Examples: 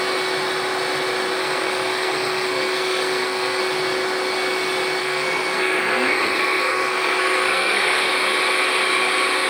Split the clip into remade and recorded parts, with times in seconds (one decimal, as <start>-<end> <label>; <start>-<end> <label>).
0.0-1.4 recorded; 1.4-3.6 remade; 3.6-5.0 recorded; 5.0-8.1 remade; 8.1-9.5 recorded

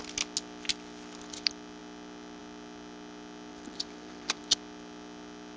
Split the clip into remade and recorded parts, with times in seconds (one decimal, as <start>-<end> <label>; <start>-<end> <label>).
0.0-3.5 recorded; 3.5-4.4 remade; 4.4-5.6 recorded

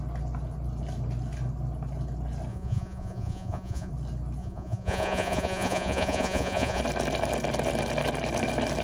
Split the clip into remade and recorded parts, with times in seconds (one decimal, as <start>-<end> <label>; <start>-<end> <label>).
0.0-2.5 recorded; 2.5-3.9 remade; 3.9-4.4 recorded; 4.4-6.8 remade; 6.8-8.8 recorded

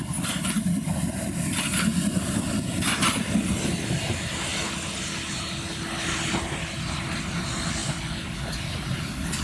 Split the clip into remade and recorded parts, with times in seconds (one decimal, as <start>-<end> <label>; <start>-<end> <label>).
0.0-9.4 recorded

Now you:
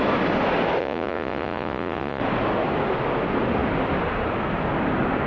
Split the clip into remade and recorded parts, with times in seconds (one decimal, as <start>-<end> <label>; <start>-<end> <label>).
0.0-0.8 recorded; 0.8-2.2 remade; 2.2-5.3 recorded

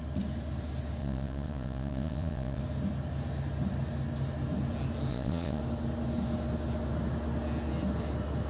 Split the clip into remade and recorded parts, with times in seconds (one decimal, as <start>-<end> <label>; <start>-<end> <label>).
0.0-1.0 recorded; 1.0-2.6 remade; 2.6-5.1 recorded; 5.1-5.6 remade; 5.6-8.5 recorded